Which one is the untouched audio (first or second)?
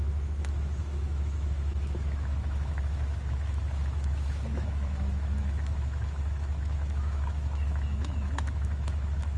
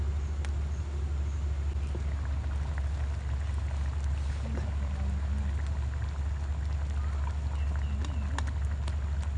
second